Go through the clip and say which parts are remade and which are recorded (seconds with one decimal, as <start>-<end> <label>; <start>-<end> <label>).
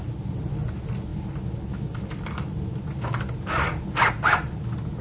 0.0-5.0 recorded